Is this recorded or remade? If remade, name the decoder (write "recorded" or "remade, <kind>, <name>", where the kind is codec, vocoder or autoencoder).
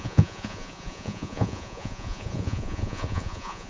remade, vocoder, Vocos